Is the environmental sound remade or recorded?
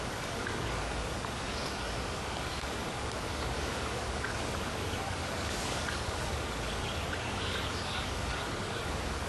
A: remade